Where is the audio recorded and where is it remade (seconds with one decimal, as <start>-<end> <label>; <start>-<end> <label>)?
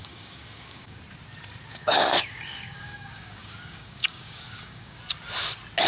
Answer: 0.0-1.0 remade; 1.0-1.7 recorded; 1.7-5.0 remade; 5.0-5.9 recorded